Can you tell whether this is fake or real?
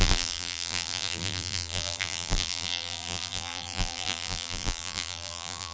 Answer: fake